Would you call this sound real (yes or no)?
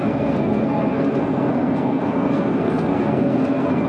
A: no